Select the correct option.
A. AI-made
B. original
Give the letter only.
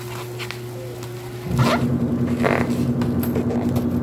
B